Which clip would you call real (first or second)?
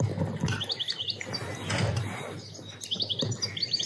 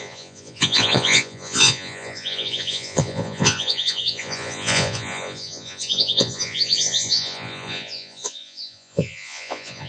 first